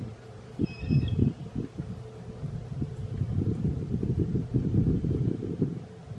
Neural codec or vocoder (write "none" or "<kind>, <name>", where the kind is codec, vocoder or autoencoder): none